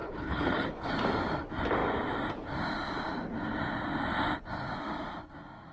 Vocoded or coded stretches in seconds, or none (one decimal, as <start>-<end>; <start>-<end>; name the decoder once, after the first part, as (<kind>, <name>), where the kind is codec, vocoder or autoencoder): 0.0-0.9 (codec, HILCodec)